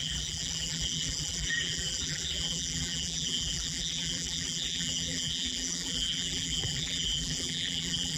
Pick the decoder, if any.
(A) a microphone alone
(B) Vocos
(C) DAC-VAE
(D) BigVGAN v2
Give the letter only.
D